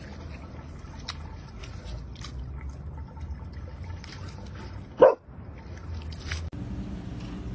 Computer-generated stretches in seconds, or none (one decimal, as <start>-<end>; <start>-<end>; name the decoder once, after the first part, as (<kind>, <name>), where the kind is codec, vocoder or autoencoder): none